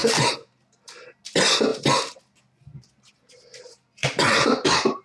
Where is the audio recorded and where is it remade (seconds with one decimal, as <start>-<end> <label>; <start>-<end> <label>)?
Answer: 0.0-0.8 remade; 0.8-4.0 recorded; 4.0-5.0 remade

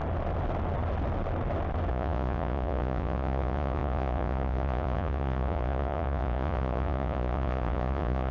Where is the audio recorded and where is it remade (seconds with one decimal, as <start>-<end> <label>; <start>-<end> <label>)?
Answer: 0.0-1.9 recorded; 1.9-8.3 remade

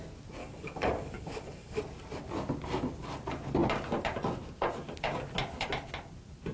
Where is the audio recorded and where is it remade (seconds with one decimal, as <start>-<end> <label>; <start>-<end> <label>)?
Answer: 0.0-0.4 recorded; 0.4-1.8 remade; 1.8-6.5 recorded

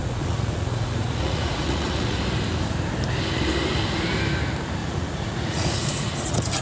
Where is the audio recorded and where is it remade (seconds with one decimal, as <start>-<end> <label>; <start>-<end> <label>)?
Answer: 0.0-2.2 remade; 2.2-4.8 recorded; 4.8-6.6 remade

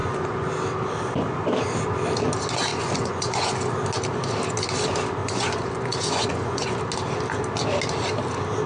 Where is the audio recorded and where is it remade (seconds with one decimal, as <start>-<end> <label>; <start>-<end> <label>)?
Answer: 0.0-0.5 remade; 0.5-2.7 recorded; 2.7-3.5 remade; 3.5-5.2 recorded; 5.2-6.8 remade; 6.8-8.7 recorded

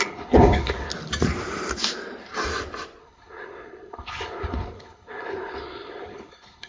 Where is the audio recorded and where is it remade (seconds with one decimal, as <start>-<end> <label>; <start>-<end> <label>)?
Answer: 0.0-0.9 remade; 0.9-3.0 recorded; 3.0-6.7 remade

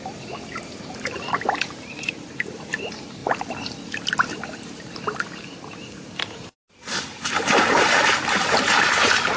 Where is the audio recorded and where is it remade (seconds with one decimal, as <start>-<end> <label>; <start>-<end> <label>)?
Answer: 0.0-3.2 remade; 3.2-4.3 recorded; 4.3-9.4 remade